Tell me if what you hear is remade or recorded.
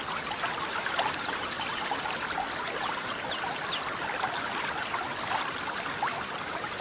recorded